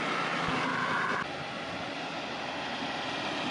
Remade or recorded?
recorded